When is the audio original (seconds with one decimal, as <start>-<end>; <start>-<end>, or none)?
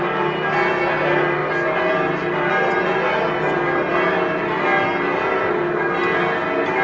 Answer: 0.0-6.8